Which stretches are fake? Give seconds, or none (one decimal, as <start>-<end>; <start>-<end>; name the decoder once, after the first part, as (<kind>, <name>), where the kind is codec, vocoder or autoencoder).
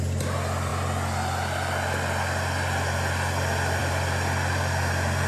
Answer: none